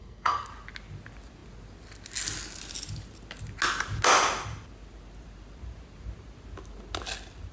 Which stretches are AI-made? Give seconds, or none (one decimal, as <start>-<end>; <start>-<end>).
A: 0.0-0.5